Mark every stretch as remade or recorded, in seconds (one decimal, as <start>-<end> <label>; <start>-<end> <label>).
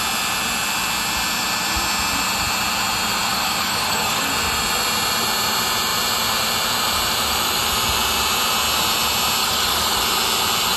0.0-3.3 recorded; 3.3-4.3 remade; 4.3-9.4 recorded; 9.4-10.0 remade; 10.0-10.8 recorded